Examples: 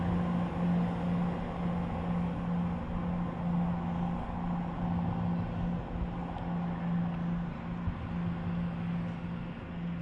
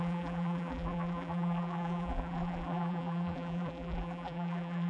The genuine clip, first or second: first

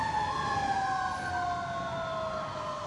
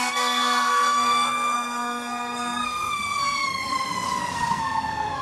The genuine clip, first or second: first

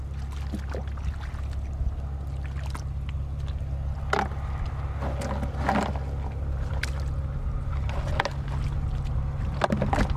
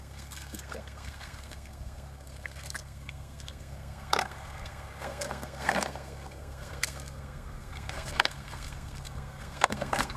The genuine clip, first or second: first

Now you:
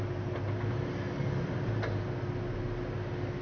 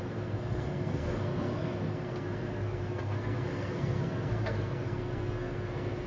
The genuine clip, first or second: first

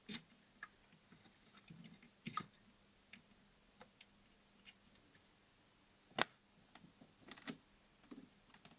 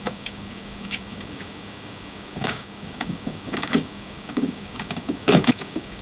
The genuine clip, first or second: first